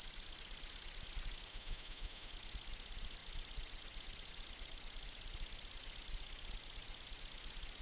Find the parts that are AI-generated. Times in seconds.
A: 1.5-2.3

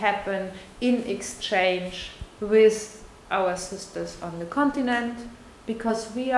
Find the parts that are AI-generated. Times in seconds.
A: 0.0-2.1; 5.9-6.4

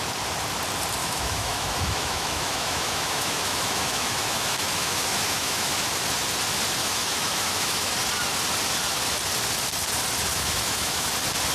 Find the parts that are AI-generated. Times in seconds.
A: 1.0-5.7; 6.8-7.9; 10.3-11.1